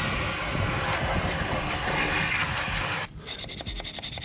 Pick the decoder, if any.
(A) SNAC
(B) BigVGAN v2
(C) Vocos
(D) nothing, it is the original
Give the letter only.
D